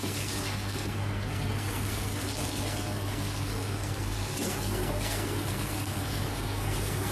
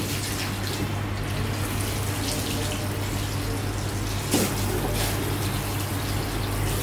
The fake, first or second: first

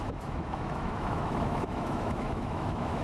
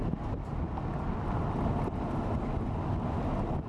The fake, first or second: first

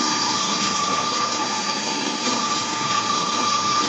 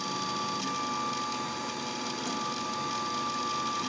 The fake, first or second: first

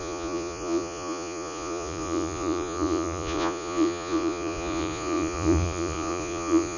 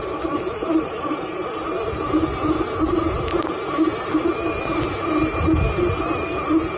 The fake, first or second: first